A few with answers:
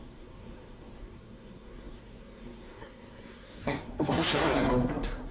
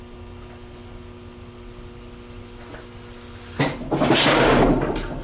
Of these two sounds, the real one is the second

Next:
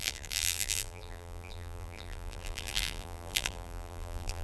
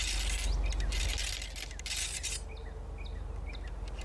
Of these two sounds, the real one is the second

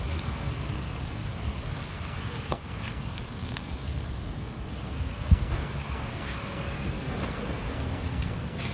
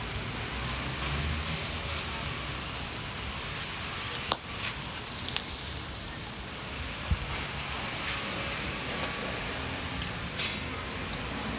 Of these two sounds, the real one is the second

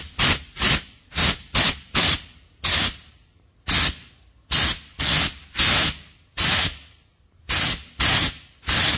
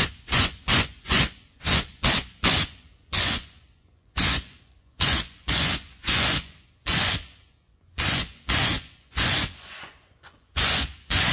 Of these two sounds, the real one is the first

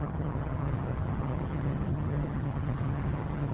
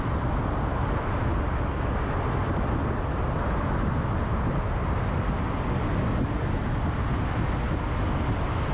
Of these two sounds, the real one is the second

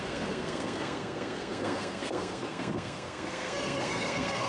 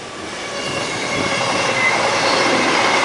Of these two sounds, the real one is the second